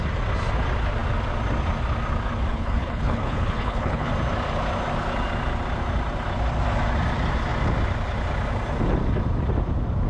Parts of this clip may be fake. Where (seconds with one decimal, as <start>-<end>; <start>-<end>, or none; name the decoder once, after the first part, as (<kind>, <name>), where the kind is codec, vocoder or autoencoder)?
2.5-4.1 (codec, HILCodec)